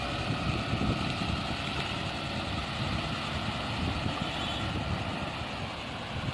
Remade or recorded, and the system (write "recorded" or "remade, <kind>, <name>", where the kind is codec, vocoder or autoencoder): recorded